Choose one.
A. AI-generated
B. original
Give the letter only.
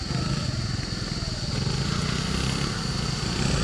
B